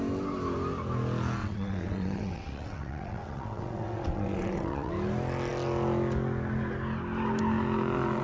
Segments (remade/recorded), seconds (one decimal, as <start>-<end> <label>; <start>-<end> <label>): 0.0-1.4 recorded; 1.4-4.9 remade; 4.9-8.2 recorded

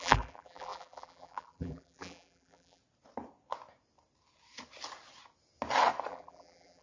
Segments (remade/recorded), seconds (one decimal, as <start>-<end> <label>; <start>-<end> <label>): 0.0-2.8 remade; 2.8-6.1 recorded; 6.1-6.8 remade